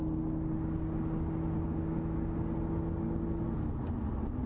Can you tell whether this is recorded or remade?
recorded